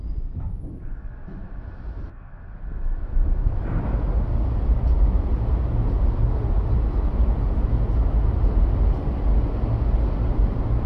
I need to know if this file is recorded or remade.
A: recorded